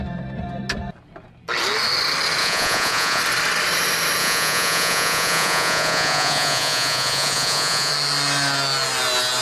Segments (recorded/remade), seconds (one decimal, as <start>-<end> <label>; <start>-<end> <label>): 0.0-2.4 recorded; 2.4-3.2 remade; 3.2-4.2 recorded; 4.2-7.9 remade; 7.9-9.4 recorded